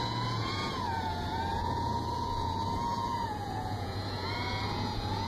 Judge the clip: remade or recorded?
remade